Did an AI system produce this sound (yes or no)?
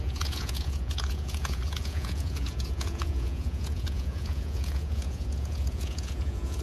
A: yes